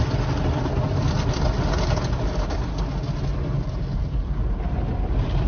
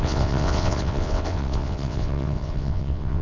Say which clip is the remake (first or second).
second